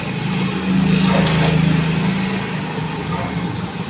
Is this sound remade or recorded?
recorded